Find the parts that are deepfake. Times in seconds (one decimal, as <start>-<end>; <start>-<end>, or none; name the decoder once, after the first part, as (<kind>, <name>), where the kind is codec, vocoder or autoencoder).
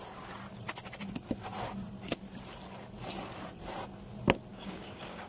4.5-5.3 (codec, DAC)